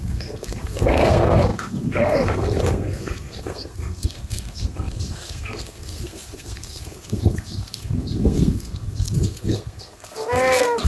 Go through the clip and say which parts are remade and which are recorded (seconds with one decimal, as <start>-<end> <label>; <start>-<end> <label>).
0.0-10.9 remade